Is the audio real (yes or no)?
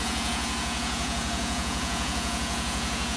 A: no